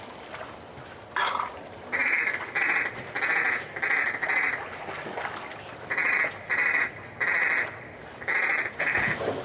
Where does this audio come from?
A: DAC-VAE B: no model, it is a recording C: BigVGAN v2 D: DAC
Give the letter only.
B